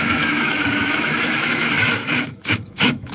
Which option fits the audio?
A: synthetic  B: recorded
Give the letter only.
A